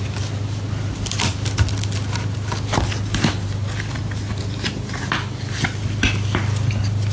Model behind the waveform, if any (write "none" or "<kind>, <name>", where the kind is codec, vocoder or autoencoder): none